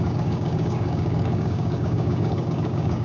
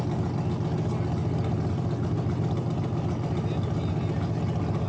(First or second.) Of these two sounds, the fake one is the first